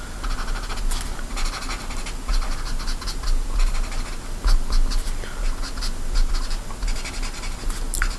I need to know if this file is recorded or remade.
recorded